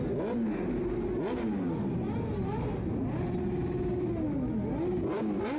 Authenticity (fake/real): real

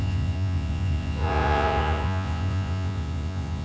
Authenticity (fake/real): fake